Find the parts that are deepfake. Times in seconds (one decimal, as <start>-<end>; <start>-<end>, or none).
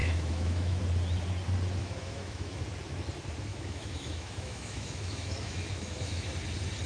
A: 0.0-0.8; 1.8-2.6; 3.5-6.3